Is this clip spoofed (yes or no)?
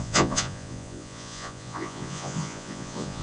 yes